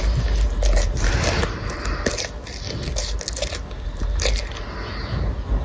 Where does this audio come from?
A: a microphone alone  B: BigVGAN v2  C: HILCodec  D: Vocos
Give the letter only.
A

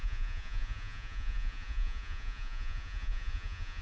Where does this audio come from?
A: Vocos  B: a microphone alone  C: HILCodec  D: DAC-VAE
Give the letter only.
A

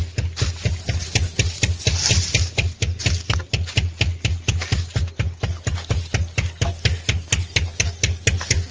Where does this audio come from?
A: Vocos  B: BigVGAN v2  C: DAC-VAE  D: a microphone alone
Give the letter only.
D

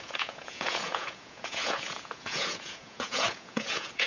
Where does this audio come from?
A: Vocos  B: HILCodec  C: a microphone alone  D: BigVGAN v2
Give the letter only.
A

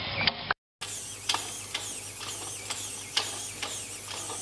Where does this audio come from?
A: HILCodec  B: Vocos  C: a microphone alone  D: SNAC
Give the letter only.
C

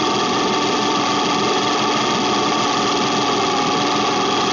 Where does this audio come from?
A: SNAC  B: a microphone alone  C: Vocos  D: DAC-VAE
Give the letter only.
B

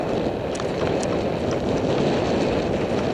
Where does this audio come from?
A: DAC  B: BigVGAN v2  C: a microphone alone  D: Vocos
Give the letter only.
C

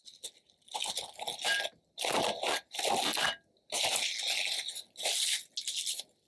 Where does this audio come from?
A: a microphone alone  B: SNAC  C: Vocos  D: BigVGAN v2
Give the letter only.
A